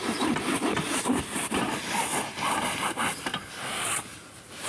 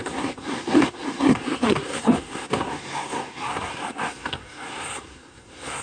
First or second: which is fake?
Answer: second